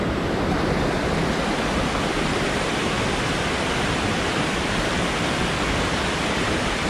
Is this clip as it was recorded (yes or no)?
no